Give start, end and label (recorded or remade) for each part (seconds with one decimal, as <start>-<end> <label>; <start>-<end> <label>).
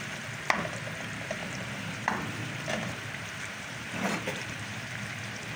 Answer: 0.0-1.4 recorded; 1.4-4.8 remade; 4.8-5.6 recorded